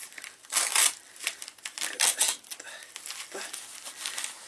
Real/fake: real